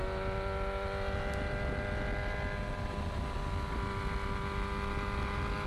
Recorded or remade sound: recorded